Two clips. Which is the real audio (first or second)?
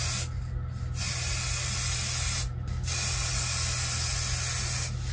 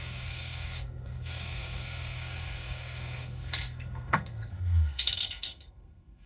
first